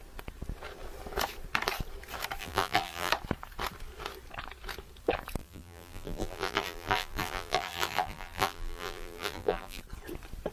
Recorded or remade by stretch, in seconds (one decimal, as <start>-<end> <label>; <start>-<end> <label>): 0.0-2.4 recorded; 2.4-3.1 remade; 3.1-5.4 recorded; 5.4-9.8 remade; 9.8-10.5 recorded